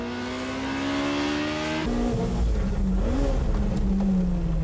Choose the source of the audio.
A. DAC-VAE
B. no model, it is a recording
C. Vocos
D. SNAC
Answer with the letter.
B